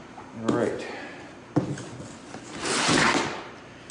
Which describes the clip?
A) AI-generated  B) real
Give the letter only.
B